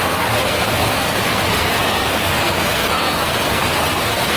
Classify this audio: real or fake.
fake